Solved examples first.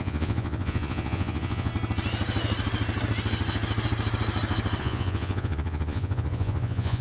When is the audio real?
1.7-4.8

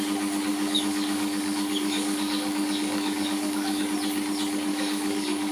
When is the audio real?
0.0-0.5; 3.8-4.7

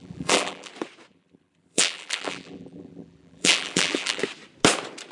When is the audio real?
0.7-1.1; 4.2-5.1

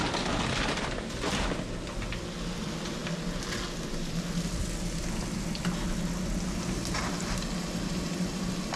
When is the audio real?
0.0-8.8

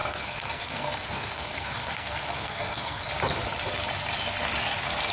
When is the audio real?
3.1-5.1

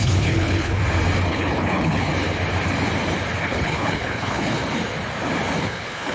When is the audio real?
0.8-1.3; 2.1-3.4; 4.6-5.6

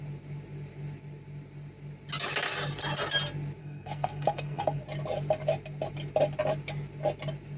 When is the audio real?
0.0-3.6; 4.8-7.6